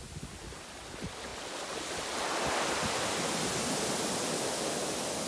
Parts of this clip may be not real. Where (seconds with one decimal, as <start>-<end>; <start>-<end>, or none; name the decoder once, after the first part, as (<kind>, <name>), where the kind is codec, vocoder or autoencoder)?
none